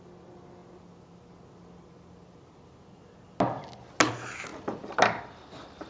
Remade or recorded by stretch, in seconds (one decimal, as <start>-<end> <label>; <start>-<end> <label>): 0.0-5.9 recorded